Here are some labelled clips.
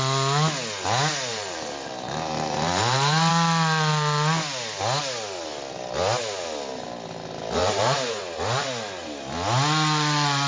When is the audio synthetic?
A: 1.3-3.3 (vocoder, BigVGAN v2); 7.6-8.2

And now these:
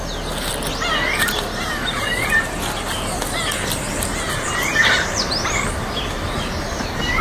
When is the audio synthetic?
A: 1.4-2.2 (vocoder, BigVGAN v2); 4.1-5.9

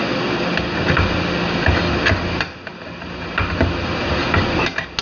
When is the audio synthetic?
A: 2.7-4.0 (vocoder, BigVGAN v2)

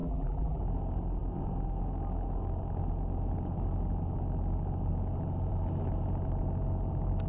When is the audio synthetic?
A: 0.0-0.6 (vocoder, BigVGAN v2)

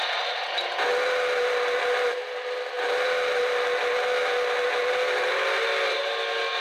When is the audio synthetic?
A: none

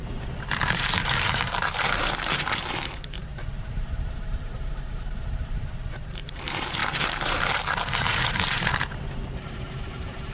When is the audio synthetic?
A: 0.0-10.3 (vocoder, BigVGAN v2)

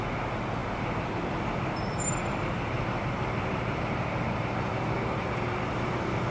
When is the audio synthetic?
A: 0.6-4.4 (vocoder, BigVGAN v2)